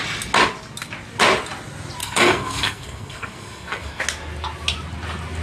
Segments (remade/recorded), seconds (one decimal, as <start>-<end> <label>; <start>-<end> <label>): 0.0-2.0 recorded; 2.0-4.0 remade; 4.0-5.4 recorded